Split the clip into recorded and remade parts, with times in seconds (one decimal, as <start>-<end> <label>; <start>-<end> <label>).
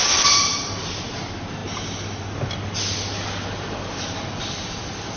0.0-1.6 remade; 1.6-4.4 recorded; 4.4-5.2 remade